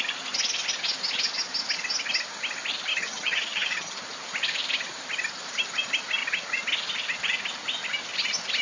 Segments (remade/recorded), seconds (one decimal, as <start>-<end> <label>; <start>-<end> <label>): 0.0-2.9 recorded; 2.9-4.0 remade; 4.0-8.6 recorded